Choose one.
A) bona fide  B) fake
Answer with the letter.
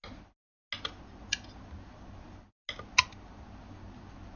A